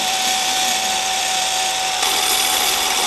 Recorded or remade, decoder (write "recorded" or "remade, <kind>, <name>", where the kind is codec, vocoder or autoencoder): remade, vocoder, BigVGAN v2